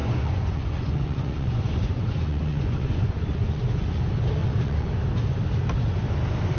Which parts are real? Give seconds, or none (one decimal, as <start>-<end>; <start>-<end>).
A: 4.0-4.4; 4.9-6.6